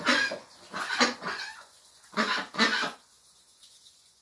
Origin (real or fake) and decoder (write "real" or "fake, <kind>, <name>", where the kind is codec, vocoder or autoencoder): fake, vocoder, Vocos